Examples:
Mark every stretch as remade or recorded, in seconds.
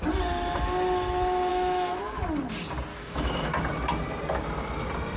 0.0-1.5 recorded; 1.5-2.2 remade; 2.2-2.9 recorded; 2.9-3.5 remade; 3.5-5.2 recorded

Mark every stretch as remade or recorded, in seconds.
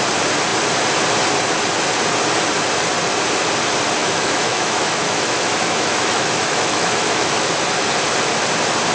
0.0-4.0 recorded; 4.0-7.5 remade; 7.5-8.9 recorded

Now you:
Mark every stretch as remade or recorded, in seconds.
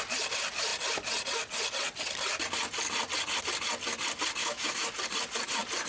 0.0-4.4 recorded; 4.4-4.9 remade; 4.9-5.9 recorded